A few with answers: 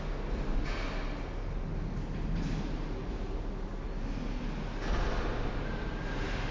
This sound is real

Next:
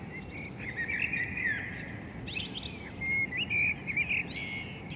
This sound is real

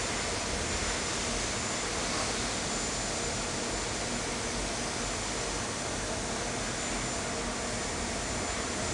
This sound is real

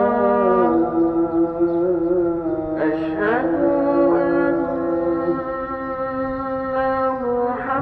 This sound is real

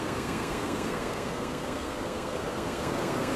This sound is fake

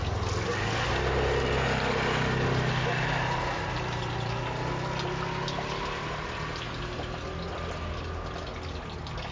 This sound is real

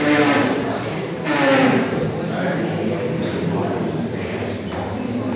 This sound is fake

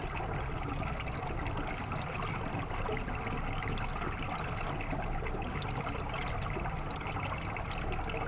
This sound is real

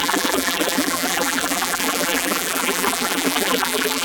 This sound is fake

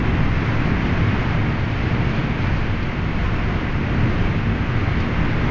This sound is real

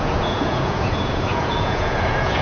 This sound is fake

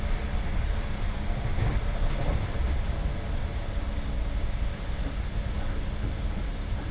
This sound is real